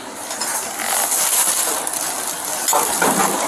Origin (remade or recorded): recorded